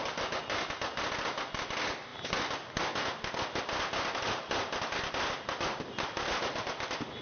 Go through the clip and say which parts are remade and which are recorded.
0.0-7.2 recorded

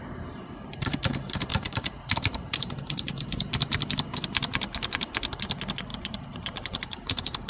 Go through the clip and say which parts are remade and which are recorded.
0.0-1.5 recorded; 1.5-3.5 remade; 3.5-5.9 recorded; 5.9-7.5 remade

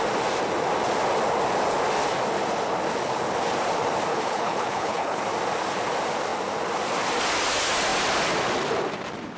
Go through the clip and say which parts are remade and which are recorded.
0.0-4.1 recorded; 4.1-5.2 remade; 5.2-9.4 recorded

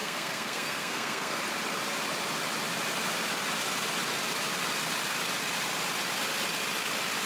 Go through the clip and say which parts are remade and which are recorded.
0.0-1.4 remade; 1.4-7.3 recorded

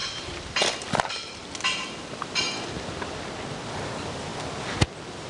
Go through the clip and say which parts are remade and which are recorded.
0.0-5.3 recorded

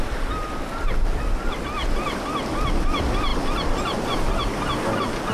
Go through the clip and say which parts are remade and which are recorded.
0.0-5.3 recorded

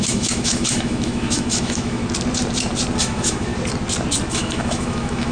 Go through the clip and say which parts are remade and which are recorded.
0.0-2.0 remade; 2.0-3.0 recorded; 3.0-3.5 remade; 3.5-4.3 recorded; 4.3-5.3 remade